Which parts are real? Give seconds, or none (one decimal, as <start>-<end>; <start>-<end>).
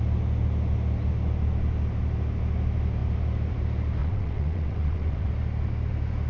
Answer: 0.0-4.0; 5.3-6.3